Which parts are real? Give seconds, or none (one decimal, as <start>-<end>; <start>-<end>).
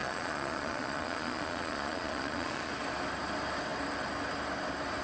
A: 2.7-5.0